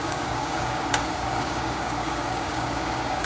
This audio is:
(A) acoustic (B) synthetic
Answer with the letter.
B